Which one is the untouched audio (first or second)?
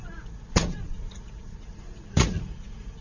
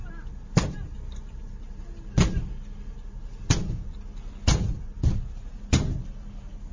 second